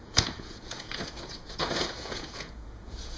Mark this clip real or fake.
fake